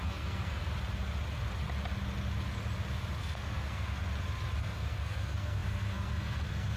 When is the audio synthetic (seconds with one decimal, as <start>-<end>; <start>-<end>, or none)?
0.0-0.6; 3.2-4.0; 4.6-6.8